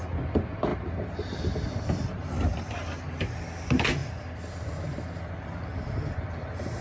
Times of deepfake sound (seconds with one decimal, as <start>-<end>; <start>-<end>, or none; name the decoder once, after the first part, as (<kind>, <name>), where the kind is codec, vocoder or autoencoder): 0.7-2.7 (vocoder, BigVGAN v2); 4.0-5.3; 5.7-6.8